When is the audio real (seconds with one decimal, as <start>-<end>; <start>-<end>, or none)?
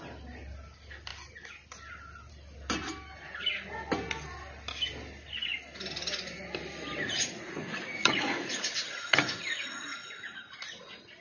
0.0-7.0; 10.4-11.2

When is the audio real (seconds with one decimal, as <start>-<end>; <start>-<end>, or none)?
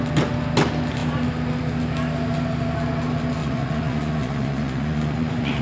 0.0-3.4